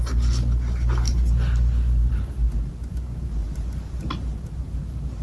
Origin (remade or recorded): recorded